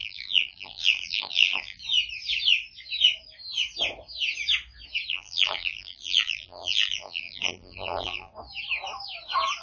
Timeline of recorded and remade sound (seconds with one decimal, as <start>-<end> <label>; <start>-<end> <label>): 0.0-1.8 remade; 1.8-5.1 recorded; 5.1-8.3 remade; 8.3-9.6 recorded